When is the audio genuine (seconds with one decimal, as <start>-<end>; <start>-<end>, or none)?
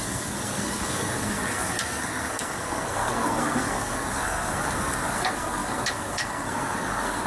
none